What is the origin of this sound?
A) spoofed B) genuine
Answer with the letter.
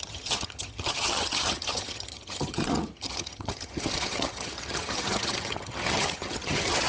A